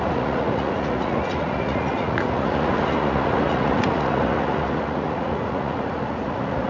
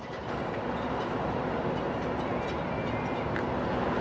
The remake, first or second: first